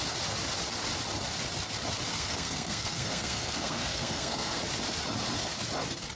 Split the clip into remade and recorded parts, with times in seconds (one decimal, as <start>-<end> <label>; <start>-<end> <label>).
0.0-2.1 recorded; 2.1-4.6 remade; 4.6-6.2 recorded